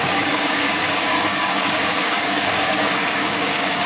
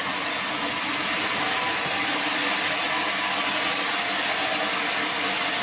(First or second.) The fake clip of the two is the first